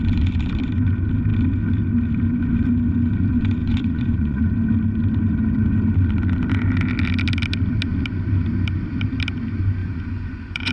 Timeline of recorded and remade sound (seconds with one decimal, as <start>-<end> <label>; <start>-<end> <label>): 0.0-3.6 recorded; 3.6-4.5 remade; 4.5-9.8 recorded; 9.8-10.7 remade